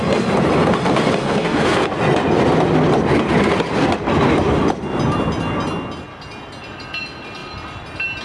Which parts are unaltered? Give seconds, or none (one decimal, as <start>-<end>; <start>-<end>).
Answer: 0.0-1.2; 1.9-8.2